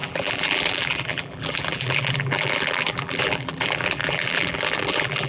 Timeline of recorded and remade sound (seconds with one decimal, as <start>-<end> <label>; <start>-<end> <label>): 0.0-5.3 remade